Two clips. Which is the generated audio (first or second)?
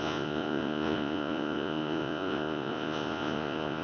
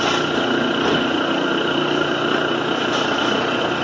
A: first